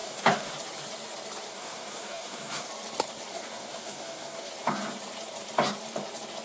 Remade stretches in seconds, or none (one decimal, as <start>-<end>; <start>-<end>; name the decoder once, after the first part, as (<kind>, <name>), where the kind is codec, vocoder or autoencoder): 0.0-0.5 (codec, DAC); 1.5-2.7; 3.3-4.5